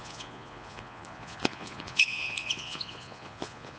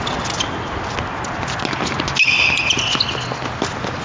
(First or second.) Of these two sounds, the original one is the second